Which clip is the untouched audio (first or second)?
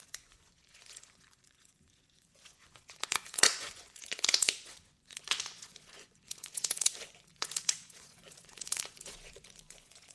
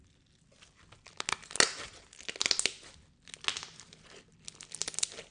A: second